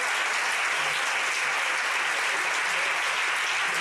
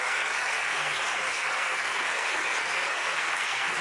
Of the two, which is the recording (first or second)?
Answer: first